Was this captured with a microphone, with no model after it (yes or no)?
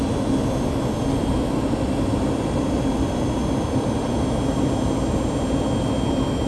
yes